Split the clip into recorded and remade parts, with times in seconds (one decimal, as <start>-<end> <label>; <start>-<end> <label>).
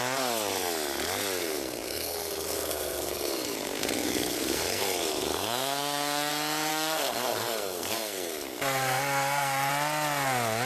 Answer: 0.0-1.4 recorded; 1.4-6.3 remade; 6.3-6.7 recorded; 6.7-9.7 remade; 9.7-10.7 recorded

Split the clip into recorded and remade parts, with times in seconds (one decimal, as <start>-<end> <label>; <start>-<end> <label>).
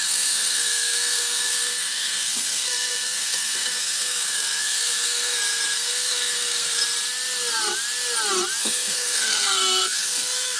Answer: 0.0-6.8 remade; 6.8-8.6 recorded; 8.6-10.6 remade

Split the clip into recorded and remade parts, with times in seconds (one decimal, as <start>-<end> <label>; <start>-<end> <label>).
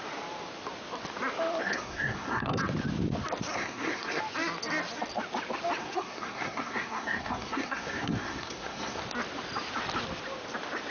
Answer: 0.0-1.6 recorded; 1.6-2.6 remade; 2.6-3.5 recorded; 3.5-4.2 remade; 4.2-5.8 recorded; 5.8-9.0 remade; 9.0-10.9 recorded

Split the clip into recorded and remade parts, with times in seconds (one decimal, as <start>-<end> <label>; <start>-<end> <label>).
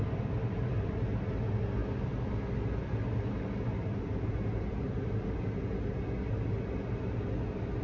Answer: 0.0-7.8 recorded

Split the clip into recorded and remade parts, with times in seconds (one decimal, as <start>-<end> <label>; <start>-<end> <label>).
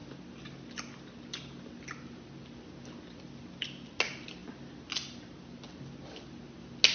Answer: 0.0-6.9 recorded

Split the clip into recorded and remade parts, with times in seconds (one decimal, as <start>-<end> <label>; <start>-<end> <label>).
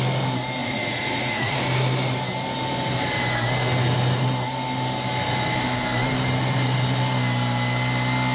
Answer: 0.0-0.6 recorded; 0.6-1.6 remade; 1.6-8.3 recorded